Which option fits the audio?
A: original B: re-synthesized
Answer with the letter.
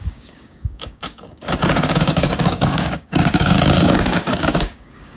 B